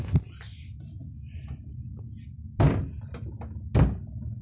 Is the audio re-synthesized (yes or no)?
no